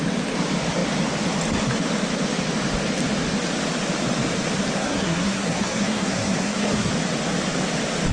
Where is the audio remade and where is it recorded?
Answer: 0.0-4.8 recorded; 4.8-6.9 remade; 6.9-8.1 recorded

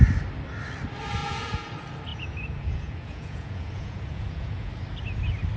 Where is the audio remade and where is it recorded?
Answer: 0.0-1.2 recorded; 1.2-1.7 remade; 1.7-2.1 recorded; 2.1-4.7 remade; 4.7-5.6 recorded

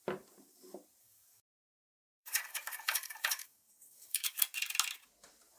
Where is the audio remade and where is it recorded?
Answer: 0.0-1.0 recorded; 1.0-4.4 remade; 4.4-5.6 recorded

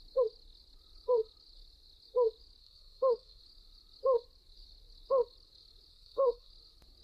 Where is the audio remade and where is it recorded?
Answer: 0.0-2.6 recorded; 2.6-3.4 remade; 3.4-5.9 recorded; 5.9-6.5 remade; 6.5-7.0 recorded